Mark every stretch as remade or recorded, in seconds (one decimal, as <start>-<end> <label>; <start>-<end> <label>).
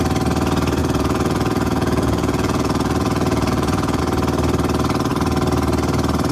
0.0-0.8 recorded; 0.8-4.0 remade; 4.0-6.3 recorded